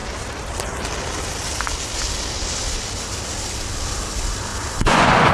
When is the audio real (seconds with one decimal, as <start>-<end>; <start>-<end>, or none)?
0.0-4.5